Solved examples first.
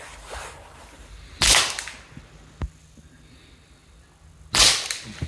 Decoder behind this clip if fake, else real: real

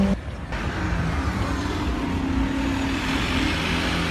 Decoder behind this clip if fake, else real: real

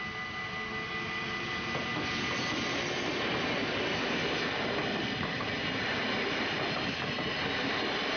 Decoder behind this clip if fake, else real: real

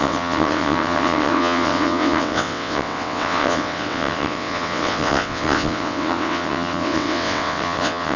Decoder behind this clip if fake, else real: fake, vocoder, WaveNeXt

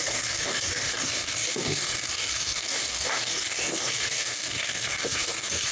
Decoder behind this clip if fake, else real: fake, codec, DAC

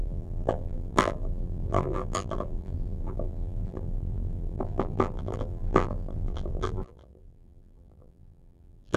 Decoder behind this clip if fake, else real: fake, vocoder, BigVGAN v2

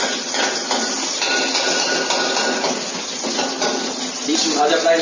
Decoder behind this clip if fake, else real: real